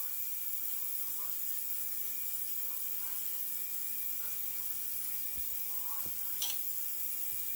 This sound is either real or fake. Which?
real